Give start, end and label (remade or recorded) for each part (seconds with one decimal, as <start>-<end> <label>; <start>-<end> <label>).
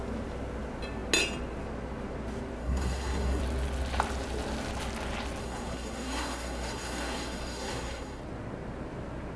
0.0-2.6 recorded; 2.6-3.4 remade; 3.4-5.4 recorded; 5.4-8.2 remade; 8.2-9.4 recorded